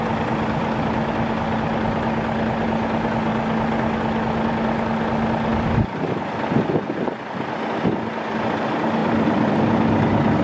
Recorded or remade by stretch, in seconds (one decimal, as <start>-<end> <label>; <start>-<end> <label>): 0.0-5.5 recorded; 5.5-6.1 remade; 6.1-9.0 recorded; 9.0-9.6 remade; 9.6-10.4 recorded